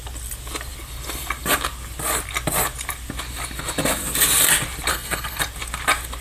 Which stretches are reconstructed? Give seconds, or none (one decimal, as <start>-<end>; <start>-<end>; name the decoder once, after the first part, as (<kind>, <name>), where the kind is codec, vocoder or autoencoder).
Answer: 4.9-5.4 (codec, SNAC)